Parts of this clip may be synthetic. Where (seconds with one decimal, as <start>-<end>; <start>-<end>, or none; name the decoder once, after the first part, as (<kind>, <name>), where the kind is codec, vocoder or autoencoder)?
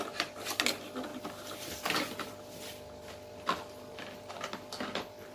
none